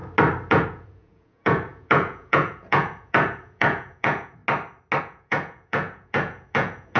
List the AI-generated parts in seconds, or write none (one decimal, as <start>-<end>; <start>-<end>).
0.5-4.4; 5.0-7.0